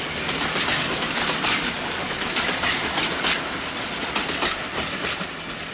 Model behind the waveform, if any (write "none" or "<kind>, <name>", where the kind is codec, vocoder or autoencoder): none